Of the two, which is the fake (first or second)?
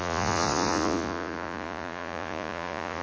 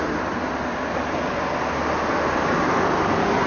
first